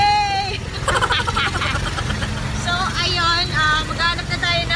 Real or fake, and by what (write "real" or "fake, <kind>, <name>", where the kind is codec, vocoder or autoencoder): real